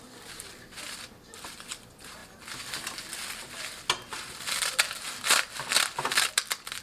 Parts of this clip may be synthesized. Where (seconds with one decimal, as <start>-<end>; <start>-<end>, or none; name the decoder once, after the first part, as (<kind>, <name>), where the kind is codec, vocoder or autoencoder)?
none